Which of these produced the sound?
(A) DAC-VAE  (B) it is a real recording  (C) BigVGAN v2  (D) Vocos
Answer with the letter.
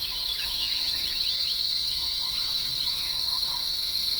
A